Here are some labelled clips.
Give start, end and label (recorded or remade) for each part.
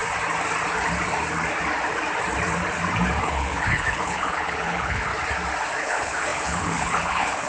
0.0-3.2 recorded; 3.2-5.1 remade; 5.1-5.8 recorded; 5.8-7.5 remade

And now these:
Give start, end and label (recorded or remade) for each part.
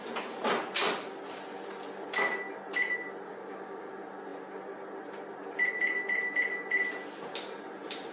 0.0-3.3 recorded; 3.3-3.9 remade; 3.9-8.1 recorded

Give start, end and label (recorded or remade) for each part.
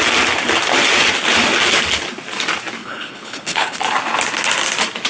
0.0-2.8 recorded; 2.8-3.8 remade; 3.8-5.1 recorded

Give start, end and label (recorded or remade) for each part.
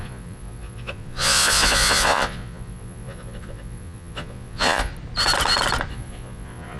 0.0-4.9 remade; 4.9-5.9 recorded; 5.9-6.8 remade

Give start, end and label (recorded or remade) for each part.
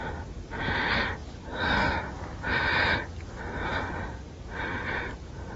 0.0-5.6 recorded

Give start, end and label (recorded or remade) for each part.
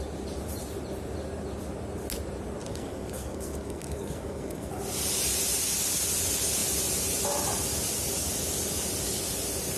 0.0-2.7 recorded; 2.7-4.7 remade; 4.7-9.8 recorded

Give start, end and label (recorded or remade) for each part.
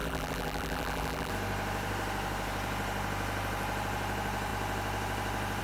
0.0-1.3 remade; 1.3-5.6 recorded